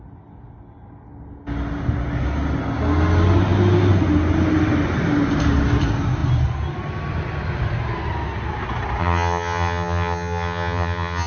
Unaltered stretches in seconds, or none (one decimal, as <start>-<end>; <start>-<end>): 0.0-9.0